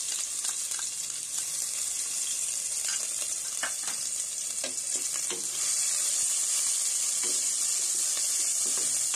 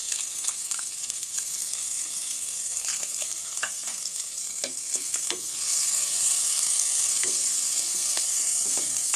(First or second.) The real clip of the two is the first